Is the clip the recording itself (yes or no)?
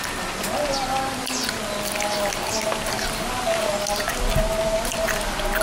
yes